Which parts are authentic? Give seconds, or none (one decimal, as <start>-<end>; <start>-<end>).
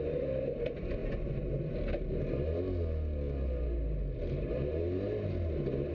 0.0-5.9